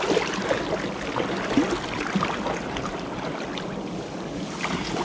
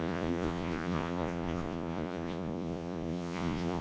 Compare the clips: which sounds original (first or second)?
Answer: first